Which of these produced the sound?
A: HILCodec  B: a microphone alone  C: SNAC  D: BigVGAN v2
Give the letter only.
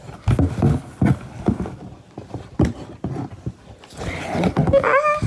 B